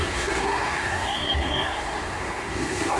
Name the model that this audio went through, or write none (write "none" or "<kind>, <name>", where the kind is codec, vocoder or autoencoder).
codec, SNAC